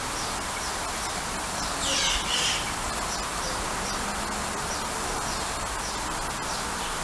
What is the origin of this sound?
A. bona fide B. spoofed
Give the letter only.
A